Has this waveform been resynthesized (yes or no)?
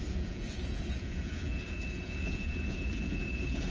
yes